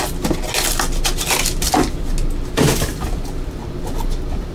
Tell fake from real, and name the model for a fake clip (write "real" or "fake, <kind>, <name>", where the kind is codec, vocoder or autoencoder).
real